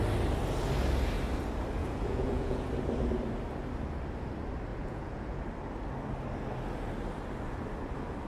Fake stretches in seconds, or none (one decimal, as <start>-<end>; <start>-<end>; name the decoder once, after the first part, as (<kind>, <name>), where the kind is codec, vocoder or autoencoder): 1.8-2.7 (vocoder, Vocos); 4.7-5.4